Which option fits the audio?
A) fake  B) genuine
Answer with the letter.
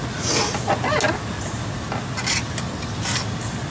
B